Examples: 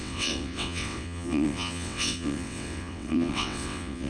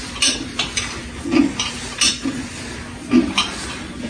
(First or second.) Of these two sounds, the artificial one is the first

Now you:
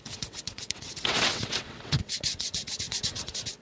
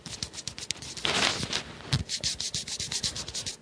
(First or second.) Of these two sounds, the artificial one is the first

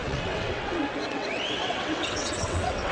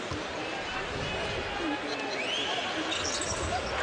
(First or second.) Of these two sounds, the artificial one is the first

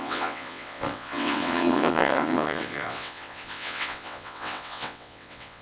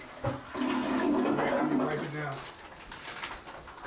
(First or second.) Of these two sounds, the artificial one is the first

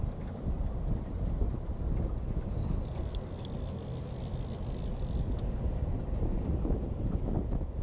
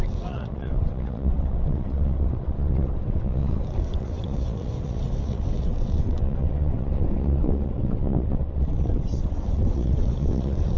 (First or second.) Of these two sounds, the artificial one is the second